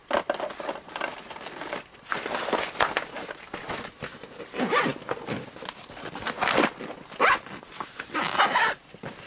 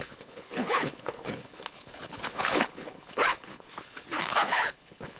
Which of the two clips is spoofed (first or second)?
second